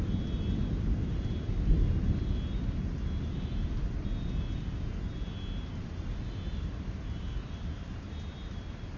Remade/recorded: remade